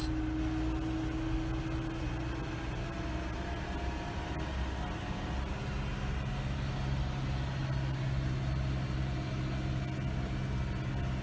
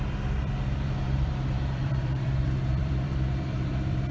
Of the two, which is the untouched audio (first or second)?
first